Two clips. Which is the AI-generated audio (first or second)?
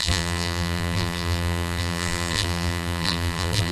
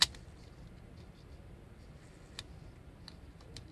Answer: first